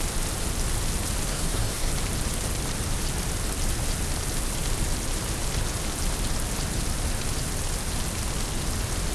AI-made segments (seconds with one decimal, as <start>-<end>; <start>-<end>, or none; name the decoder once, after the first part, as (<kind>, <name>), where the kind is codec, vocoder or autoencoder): 1.3-1.9 (codec, SNAC)